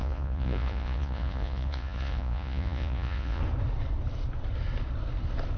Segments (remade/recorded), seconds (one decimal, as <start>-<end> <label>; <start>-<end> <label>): 0.0-3.4 remade; 3.4-5.6 recorded